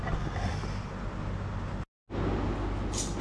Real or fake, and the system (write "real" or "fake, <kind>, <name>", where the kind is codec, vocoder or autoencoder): real